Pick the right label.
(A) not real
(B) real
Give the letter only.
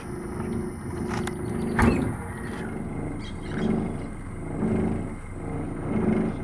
B